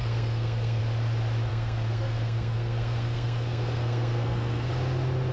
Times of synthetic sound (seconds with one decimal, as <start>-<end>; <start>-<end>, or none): 0.0-0.8; 1.5-4.7